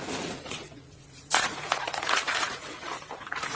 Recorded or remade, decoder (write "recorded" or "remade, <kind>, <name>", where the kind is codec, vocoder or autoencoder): remade, vocoder, Vocos